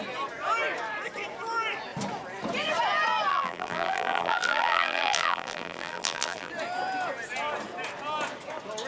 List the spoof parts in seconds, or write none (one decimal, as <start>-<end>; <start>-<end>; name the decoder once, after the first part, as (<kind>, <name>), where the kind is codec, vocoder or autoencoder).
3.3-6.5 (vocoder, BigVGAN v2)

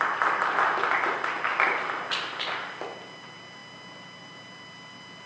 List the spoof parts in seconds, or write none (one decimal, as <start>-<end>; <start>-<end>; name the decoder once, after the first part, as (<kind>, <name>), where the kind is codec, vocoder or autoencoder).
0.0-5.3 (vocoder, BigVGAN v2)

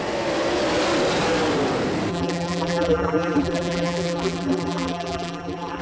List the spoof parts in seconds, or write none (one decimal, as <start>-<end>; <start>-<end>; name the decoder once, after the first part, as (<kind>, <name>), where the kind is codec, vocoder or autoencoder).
2.1-5.8 (vocoder, BigVGAN v2)

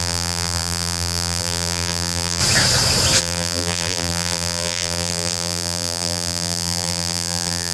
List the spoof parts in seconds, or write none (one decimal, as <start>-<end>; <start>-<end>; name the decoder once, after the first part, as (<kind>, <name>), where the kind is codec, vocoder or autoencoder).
0.0-2.4 (vocoder, BigVGAN v2); 3.2-7.7